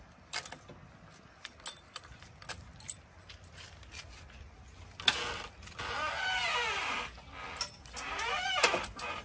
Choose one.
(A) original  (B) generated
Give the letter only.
A